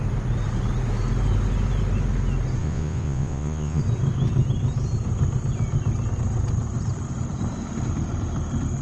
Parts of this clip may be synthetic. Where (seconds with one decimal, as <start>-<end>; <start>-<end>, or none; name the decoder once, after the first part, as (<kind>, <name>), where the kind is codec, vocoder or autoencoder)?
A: 2.6-3.8 (vocoder, Vocos)